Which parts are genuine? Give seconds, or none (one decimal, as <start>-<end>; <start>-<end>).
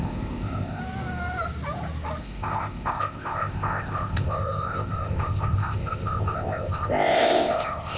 0.8-2.2